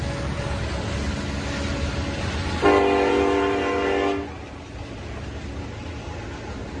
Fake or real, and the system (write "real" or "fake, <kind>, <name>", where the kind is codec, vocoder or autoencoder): real